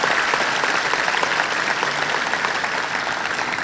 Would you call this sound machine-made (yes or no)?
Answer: no